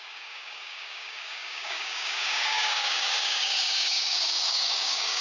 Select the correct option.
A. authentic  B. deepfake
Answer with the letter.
B